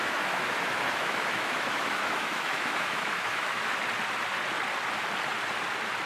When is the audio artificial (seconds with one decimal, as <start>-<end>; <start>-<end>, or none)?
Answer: 0.0-3.7